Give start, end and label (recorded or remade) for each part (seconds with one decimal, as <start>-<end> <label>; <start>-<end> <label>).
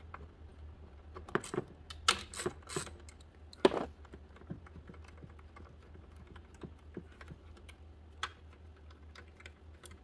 0.0-10.0 recorded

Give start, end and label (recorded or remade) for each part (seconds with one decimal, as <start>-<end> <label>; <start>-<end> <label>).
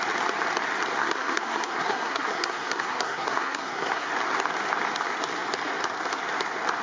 0.0-1.0 recorded; 1.0-4.1 remade; 4.1-6.8 recorded